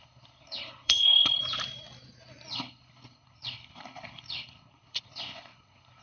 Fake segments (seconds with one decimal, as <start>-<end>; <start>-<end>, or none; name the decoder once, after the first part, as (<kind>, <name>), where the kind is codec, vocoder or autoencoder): 0.0-1.4 (codec, HILCodec); 2.5-6.0